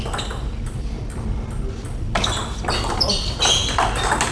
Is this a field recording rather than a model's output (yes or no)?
yes